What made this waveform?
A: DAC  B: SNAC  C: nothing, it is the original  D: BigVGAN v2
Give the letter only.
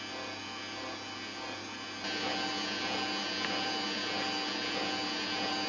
C